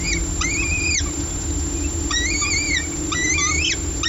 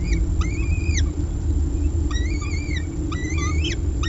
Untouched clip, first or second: first